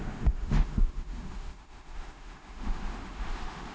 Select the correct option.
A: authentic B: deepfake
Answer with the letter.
B